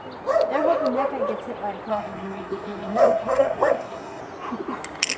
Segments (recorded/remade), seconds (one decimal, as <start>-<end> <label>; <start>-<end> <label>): 0.0-1.9 recorded; 1.9-4.2 remade; 4.2-5.2 recorded